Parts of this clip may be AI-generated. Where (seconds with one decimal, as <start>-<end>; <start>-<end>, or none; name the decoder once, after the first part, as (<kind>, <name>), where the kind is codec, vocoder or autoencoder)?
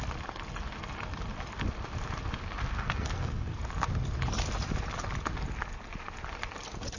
2.6-3.6 (codec, SNAC)